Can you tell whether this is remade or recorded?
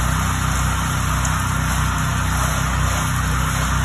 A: recorded